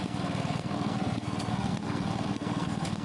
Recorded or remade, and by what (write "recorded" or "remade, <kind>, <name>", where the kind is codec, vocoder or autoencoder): remade, codec, SNAC